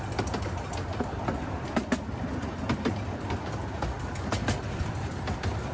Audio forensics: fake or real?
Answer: real